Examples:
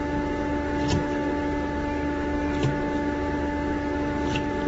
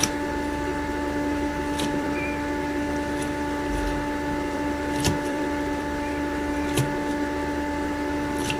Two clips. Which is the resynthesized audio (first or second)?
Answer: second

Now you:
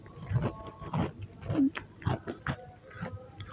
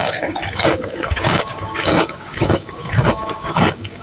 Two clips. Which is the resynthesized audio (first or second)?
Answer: second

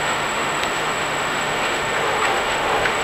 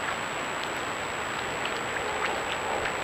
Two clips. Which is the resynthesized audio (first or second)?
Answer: first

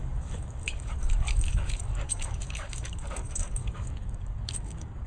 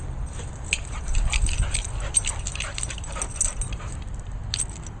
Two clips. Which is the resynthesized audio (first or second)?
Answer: first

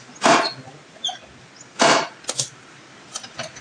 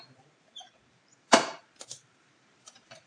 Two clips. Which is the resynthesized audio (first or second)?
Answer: second